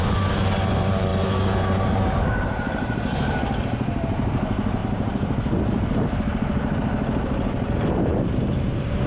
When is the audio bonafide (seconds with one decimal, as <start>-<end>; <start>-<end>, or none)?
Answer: none